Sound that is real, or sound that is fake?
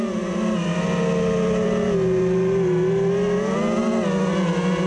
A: real